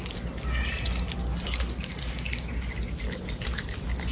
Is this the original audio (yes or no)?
yes